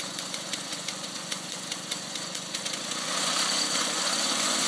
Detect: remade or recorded remade